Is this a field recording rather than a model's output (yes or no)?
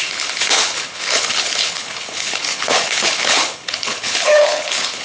no